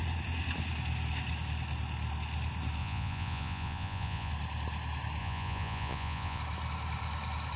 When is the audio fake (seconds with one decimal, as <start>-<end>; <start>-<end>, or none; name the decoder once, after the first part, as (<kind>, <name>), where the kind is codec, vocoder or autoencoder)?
2.8-4.3 (vocoder, Vocos); 5.2-6.4